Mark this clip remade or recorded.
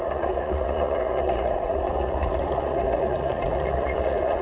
remade